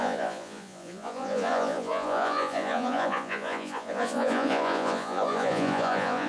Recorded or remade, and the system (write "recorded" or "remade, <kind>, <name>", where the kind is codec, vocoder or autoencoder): remade, vocoder, Vocos